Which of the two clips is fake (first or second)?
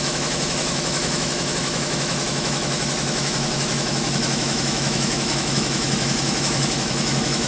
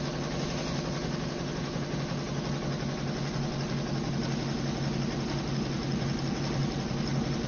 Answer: first